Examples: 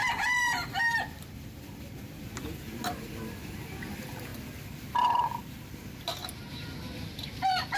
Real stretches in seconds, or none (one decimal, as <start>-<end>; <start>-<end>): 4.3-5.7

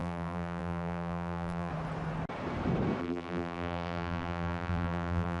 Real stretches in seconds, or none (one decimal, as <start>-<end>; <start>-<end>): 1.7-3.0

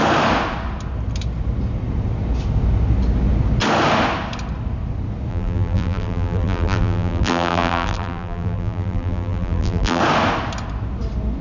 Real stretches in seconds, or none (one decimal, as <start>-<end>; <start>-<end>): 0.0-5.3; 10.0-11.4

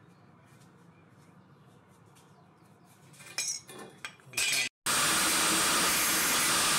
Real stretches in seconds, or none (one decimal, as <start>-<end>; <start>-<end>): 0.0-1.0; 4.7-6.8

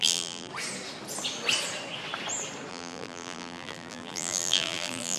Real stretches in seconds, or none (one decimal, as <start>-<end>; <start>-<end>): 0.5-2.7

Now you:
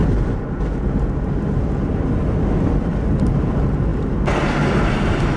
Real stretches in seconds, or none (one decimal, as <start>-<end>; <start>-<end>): 0.0-5.4

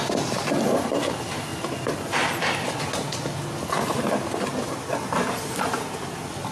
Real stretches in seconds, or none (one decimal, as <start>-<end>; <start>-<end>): 0.0-6.5